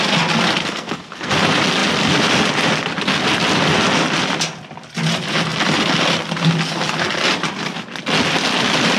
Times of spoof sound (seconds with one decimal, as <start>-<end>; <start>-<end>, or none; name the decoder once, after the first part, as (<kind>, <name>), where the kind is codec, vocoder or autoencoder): 0.6-1.3 (codec, SNAC)